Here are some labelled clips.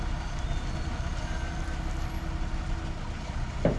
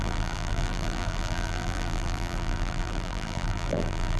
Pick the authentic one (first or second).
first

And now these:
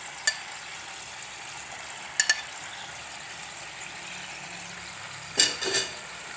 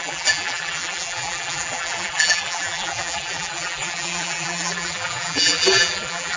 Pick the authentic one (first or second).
first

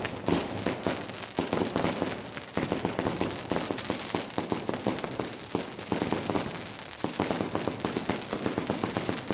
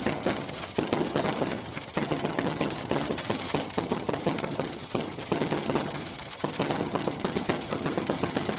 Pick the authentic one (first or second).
first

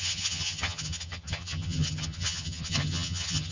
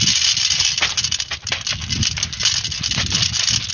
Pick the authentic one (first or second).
second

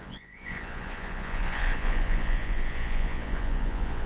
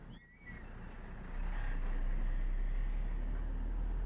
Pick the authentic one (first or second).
second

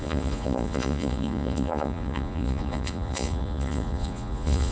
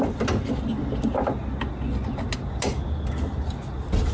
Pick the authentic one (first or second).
second